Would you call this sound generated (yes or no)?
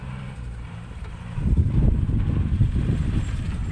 yes